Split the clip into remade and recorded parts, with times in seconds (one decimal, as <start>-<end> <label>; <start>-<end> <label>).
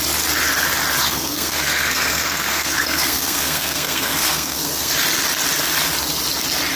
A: 0.0-1.0 recorded; 1.0-4.9 remade; 4.9-6.8 recorded